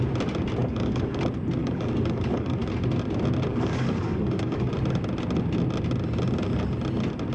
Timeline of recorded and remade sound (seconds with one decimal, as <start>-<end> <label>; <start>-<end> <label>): 0.0-0.6 recorded; 0.6-1.2 remade; 1.2-1.6 recorded; 1.6-2.7 remade; 2.7-3.5 recorded; 3.5-4.7 remade; 4.7-7.3 recorded